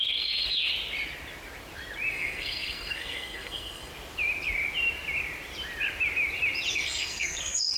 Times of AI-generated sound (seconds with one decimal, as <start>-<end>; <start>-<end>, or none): 0.0-0.7; 2.1-3.9; 6.7-7.8